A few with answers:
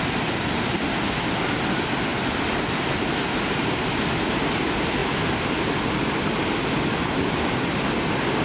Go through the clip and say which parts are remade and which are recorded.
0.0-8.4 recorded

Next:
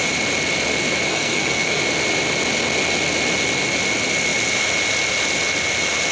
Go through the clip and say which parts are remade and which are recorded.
0.0-1.1 recorded; 1.1-1.8 remade; 1.8-6.1 recorded

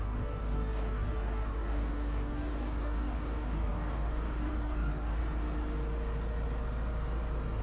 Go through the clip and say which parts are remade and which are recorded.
0.0-5.2 remade; 5.2-7.6 recorded

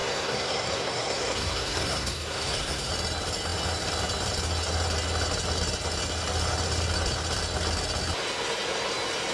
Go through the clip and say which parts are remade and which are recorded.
0.0-2.9 remade; 2.9-9.3 recorded

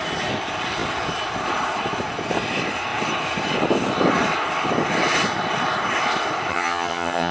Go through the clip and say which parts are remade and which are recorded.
0.0-6.5 recorded; 6.5-7.3 remade